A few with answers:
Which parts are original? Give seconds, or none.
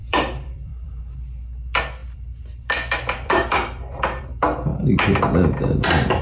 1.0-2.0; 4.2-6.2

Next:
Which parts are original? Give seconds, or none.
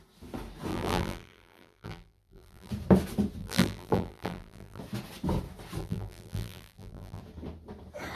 0.0-0.7; 2.7-3.4; 4.8-5.8; 7.2-8.2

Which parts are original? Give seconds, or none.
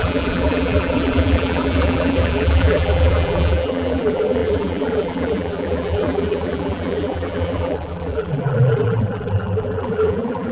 none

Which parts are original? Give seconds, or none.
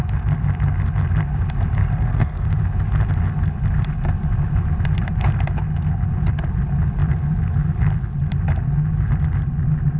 0.0-1.8; 2.6-10.0